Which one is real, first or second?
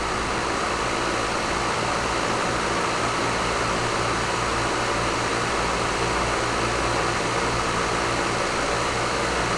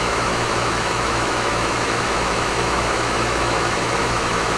first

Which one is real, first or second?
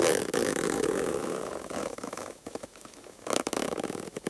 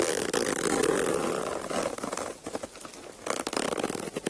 second